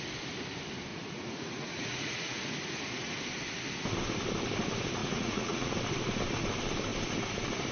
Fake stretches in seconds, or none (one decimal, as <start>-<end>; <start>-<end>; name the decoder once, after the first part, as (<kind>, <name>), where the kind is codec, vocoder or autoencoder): 0.9-3.2 (vocoder, Vocos); 5.0-5.7